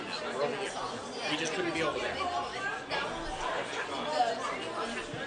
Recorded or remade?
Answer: recorded